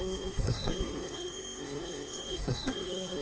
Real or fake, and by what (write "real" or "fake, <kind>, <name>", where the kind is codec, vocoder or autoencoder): fake, codec, SNAC